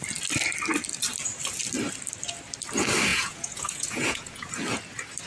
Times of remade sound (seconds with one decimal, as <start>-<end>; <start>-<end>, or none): 3.1-4.5